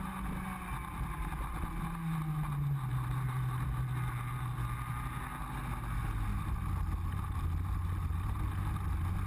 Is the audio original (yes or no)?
yes